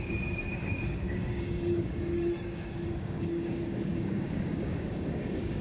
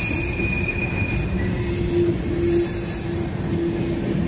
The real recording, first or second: second